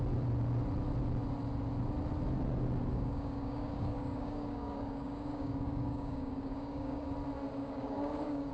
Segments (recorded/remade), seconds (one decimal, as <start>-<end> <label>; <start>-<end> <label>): 0.0-2.9 recorded; 2.9-7.1 remade; 7.1-7.6 recorded; 7.6-8.5 remade